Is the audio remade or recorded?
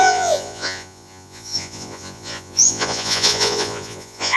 remade